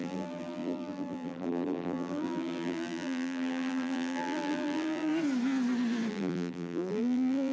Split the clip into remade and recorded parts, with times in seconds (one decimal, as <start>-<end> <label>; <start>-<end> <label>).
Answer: 0.0-5.1 remade; 5.1-6.1 recorded; 6.1-7.5 remade